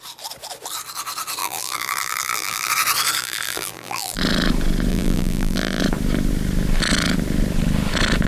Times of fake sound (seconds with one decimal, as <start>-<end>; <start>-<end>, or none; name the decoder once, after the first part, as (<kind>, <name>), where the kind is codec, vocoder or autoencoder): 1.4-2.7 (vocoder, BigVGAN v2); 3.2-4.2; 4.9-5.8